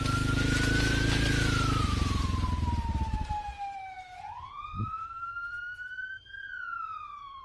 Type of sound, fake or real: real